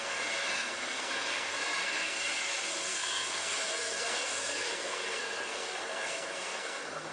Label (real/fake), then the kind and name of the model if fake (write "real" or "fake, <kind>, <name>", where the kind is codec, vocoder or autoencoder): fake, codec, SNAC